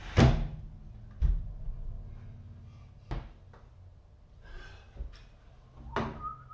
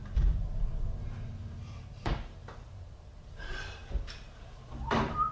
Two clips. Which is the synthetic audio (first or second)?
second